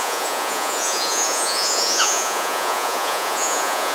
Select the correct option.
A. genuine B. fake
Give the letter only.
B